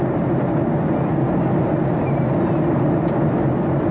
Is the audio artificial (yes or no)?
no